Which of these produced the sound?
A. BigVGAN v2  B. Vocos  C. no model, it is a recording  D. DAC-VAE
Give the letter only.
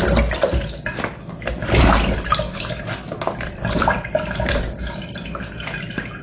C